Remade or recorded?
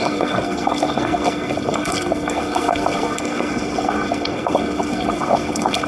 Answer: remade